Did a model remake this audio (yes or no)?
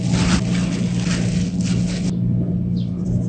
no